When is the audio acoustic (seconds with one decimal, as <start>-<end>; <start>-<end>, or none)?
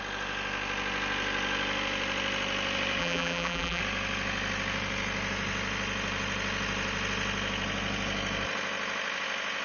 0.0-3.0; 3.8-9.6